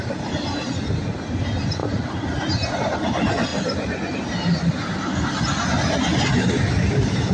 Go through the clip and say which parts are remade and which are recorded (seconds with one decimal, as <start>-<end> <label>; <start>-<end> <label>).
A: 0.0-7.3 recorded